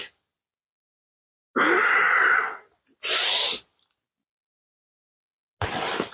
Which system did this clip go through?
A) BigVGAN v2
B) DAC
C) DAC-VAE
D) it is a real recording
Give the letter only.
D